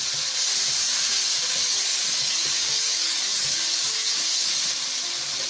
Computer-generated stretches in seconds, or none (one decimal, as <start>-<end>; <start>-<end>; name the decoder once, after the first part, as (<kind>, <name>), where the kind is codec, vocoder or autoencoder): 1.3-4.6 (codec, DAC)